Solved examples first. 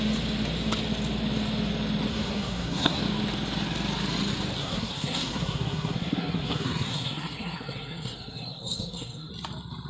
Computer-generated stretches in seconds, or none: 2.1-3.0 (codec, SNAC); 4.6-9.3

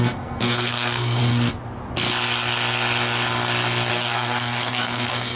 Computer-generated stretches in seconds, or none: 0.0-1.2 (codec, SNAC); 3.9-5.4

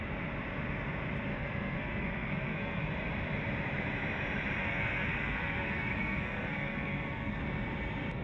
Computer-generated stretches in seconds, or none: 1.3-2.8 (codec, SNAC); 4.6-7.4

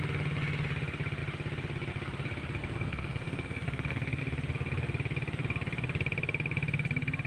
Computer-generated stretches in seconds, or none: 2.6-4.2 (codec, SNAC)